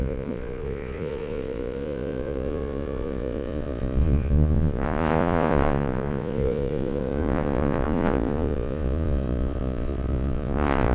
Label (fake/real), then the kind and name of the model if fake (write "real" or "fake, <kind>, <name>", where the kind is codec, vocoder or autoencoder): fake, vocoder, Vocos